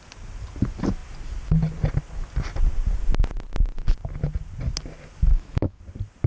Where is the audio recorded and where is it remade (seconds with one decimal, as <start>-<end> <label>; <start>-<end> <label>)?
0.0-5.3 recorded; 5.3-5.8 remade; 5.8-6.3 recorded